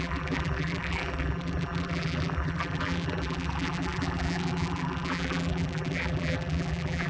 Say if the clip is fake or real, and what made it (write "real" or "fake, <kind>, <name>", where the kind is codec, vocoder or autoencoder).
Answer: fake, vocoder, BigVGAN v2